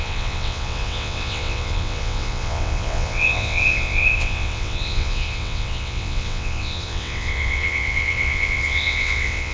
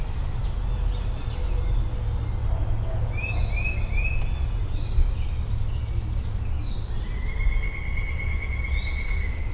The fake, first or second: first